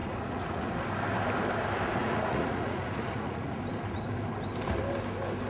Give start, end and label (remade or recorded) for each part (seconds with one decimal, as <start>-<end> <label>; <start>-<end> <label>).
0.0-0.7 remade; 0.7-2.0 recorded; 2.0-3.6 remade; 3.6-5.5 recorded